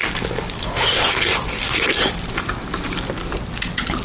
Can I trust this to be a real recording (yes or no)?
yes